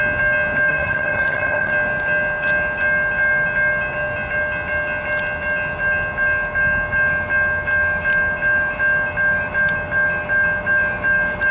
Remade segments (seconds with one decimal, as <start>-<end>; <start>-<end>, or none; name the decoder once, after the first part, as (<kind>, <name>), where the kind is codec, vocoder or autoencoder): 0.7-1.7 (vocoder, HiFi-GAN)